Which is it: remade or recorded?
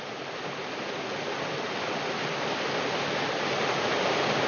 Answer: recorded